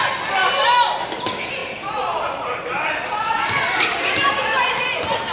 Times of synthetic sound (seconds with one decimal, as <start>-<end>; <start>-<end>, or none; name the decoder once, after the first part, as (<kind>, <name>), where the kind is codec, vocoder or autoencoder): 1.6-4.8 (vocoder, BigVGAN v2)